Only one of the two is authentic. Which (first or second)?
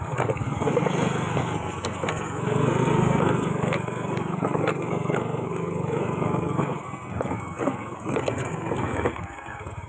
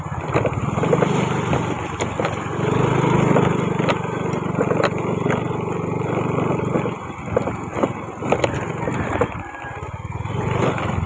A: second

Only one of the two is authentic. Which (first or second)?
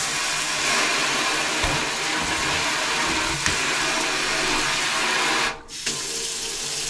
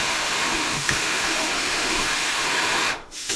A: first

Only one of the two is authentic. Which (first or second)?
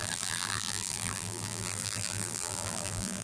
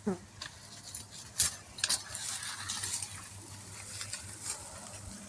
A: second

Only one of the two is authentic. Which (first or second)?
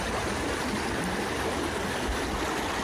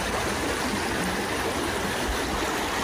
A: second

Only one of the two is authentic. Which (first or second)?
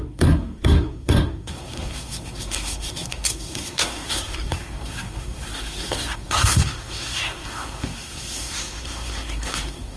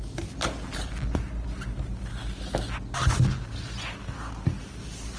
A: second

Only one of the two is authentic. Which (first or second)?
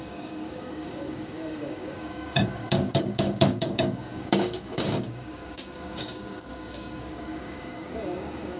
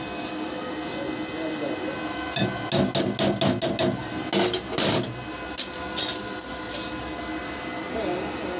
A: second